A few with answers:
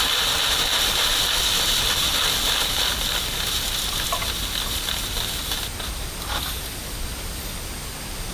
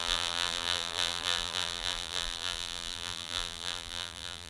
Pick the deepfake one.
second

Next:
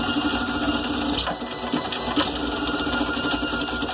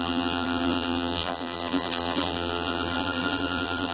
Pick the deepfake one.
second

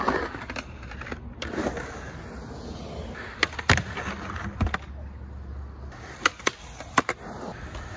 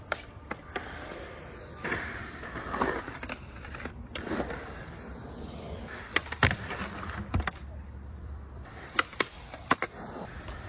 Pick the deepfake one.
second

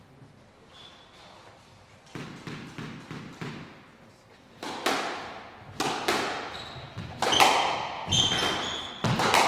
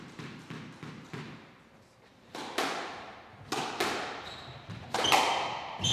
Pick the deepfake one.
second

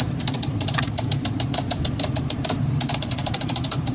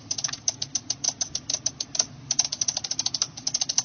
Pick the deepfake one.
first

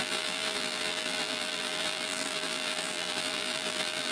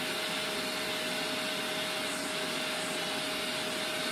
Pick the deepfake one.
first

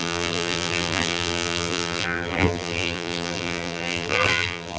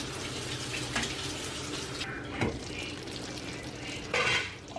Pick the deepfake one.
first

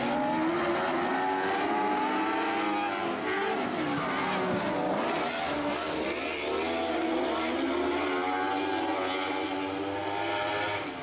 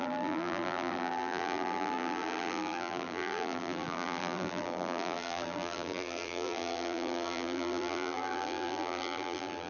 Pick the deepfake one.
second